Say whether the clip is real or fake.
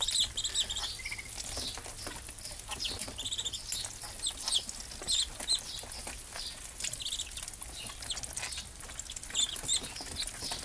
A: real